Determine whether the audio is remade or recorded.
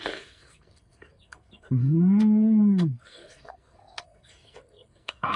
remade